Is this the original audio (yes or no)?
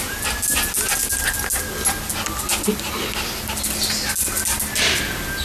yes